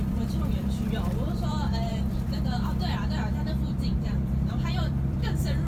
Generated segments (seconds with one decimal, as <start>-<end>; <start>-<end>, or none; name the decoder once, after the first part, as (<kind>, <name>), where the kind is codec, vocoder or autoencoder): 0.0-5.7 (vocoder, BigVGAN v2)